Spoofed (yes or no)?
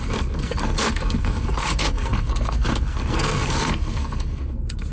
yes